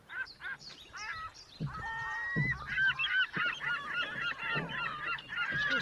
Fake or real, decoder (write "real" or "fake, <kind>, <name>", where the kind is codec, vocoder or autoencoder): real